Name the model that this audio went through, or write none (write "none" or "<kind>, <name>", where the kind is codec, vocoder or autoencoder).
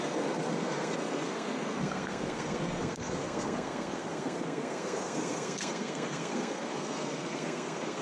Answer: codec, SNAC